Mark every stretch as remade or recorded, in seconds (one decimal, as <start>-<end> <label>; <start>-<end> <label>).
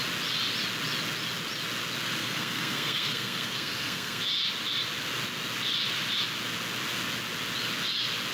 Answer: 0.0-2.2 recorded; 2.2-4.2 remade; 4.2-8.3 recorded